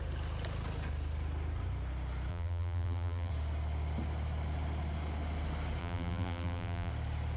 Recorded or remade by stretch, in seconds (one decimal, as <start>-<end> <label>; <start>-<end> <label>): 0.0-2.3 recorded; 2.3-3.3 remade; 3.3-5.8 recorded; 5.8-6.9 remade; 6.9-7.4 recorded